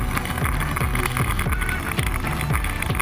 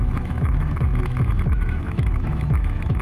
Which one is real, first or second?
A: first